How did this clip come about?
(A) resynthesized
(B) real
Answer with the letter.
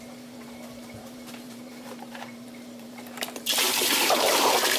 A